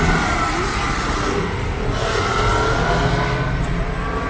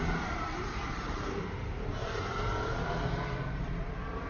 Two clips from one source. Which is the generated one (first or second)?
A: second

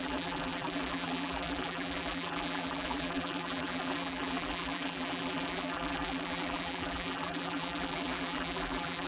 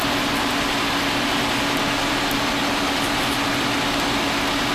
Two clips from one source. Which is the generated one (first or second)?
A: first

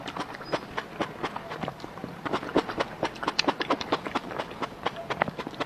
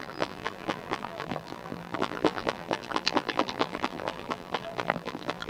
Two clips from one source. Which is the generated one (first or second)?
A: second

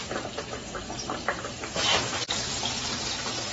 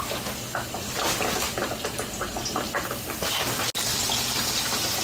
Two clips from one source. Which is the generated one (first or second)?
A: first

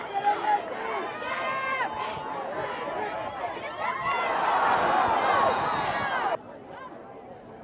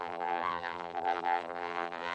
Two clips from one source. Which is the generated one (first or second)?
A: second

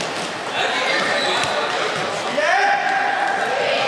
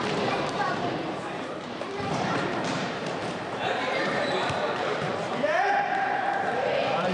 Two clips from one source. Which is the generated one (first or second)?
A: second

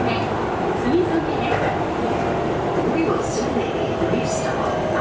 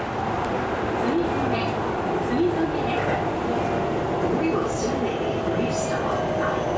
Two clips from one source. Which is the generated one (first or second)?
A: first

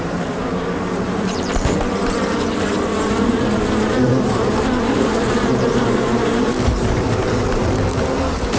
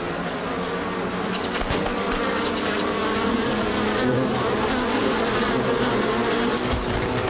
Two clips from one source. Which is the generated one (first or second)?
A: first